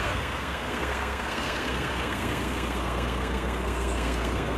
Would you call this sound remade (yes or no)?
yes